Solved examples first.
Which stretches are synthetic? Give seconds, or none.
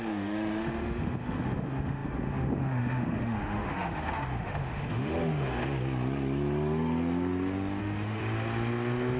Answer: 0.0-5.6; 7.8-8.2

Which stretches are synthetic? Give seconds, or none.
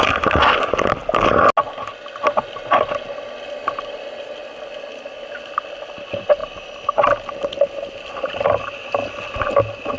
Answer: none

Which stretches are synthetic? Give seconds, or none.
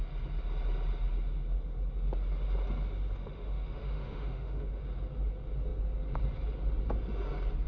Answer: 3.2-4.8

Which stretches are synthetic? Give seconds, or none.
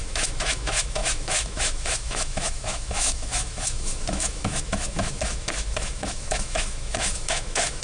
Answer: 0.0-7.8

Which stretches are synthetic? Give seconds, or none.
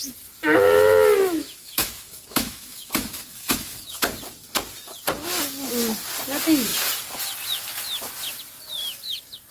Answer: 1.4-4.0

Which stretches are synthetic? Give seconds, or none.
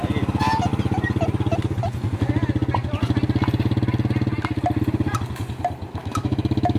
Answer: 6.0-6.8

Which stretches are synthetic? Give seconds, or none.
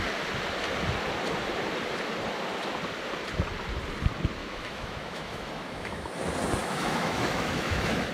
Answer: 4.4-6.1; 6.6-8.1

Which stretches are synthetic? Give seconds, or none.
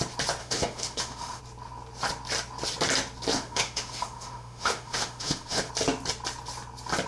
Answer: 0.4-1.4; 3.3-5.7